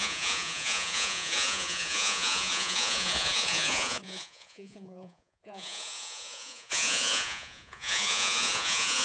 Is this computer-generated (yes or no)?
yes